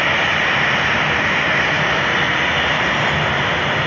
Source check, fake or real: real